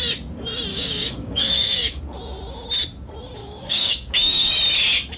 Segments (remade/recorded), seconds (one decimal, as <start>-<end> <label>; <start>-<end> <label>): 0.0-0.7 recorded; 0.7-2.0 remade; 2.0-3.4 recorded; 3.4-4.5 remade; 4.5-5.2 recorded